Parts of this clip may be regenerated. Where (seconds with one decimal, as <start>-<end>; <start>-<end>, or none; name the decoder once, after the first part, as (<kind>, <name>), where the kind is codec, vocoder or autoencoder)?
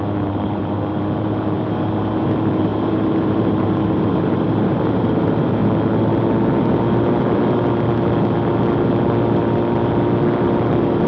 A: 0.0-5.6 (vocoder, BigVGAN v2); 10.7-11.1